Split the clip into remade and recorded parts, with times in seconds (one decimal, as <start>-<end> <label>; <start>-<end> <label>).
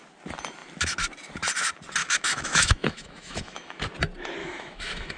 0.0-2.0 recorded; 2.0-3.8 remade; 3.8-4.4 recorded; 4.4-5.2 remade